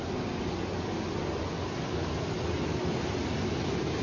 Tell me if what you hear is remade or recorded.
recorded